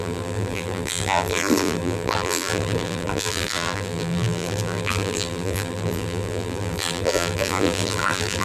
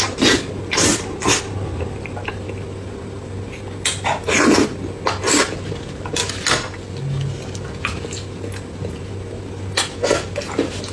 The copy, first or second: first